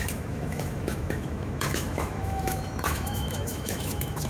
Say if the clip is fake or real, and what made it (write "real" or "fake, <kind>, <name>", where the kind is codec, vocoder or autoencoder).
fake, autoencoder, DAC-VAE